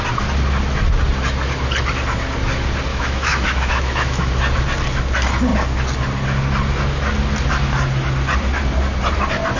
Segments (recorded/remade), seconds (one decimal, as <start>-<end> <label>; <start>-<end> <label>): 0.0-2.9 recorded; 2.9-4.3 remade; 4.3-9.6 recorded